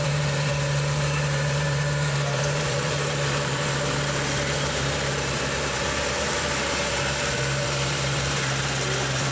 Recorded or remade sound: remade